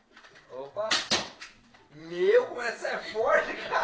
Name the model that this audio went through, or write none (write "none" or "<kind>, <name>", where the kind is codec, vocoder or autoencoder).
vocoder, WaveNeXt